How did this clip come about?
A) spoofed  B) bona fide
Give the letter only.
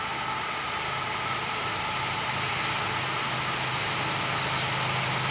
B